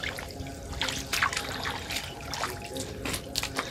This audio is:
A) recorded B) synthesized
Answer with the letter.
A